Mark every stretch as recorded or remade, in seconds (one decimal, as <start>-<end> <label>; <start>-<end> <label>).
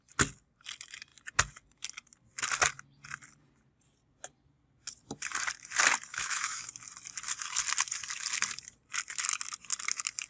0.0-6.1 recorded; 6.1-6.7 remade; 6.7-10.3 recorded